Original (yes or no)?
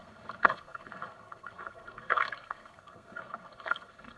no